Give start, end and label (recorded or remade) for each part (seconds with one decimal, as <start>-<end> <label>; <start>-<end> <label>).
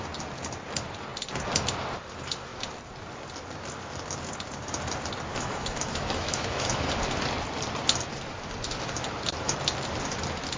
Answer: 0.0-5.3 recorded; 5.3-6.9 remade; 6.9-10.6 recorded